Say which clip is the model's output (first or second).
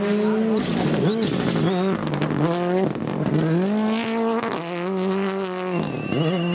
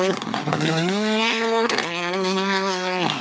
second